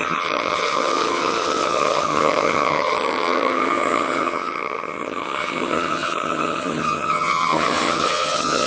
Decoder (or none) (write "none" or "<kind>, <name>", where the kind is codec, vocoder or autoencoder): vocoder, HiFi-GAN